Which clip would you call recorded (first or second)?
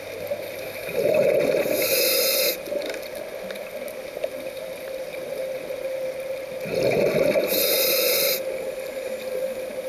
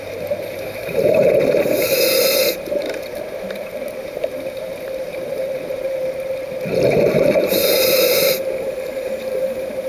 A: first